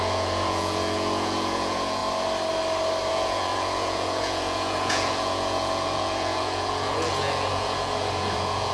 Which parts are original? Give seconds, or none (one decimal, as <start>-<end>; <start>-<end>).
2.0-3.1